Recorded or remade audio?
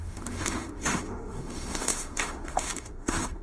remade